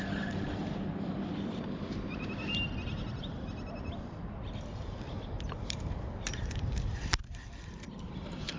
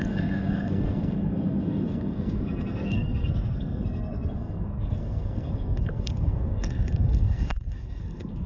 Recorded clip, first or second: first